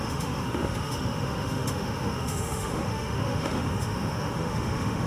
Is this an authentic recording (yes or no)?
no